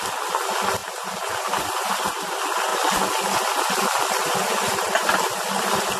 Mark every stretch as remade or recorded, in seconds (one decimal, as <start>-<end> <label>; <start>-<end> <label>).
0.0-0.8 recorded; 0.8-2.2 remade; 2.2-6.0 recorded